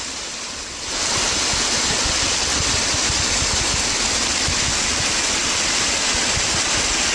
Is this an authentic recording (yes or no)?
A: yes